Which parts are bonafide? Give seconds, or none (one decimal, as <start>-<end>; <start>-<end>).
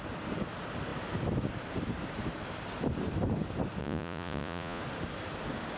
0.0-3.8; 4.8-5.8